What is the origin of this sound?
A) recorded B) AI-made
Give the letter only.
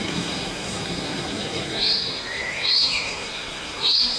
B